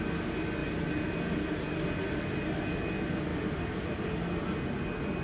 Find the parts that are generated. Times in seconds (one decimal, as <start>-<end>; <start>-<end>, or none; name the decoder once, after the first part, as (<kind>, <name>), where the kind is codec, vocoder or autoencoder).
3.3-4.5 (vocoder, BigVGAN v2)